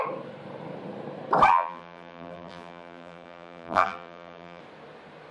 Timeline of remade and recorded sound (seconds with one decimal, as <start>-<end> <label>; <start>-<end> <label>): 0.0-1.5 recorded; 1.5-4.6 remade; 4.6-5.3 recorded